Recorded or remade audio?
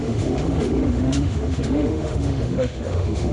remade